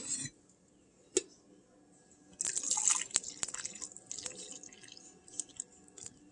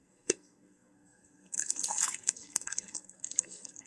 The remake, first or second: second